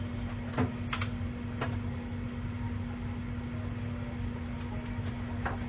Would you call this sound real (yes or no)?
yes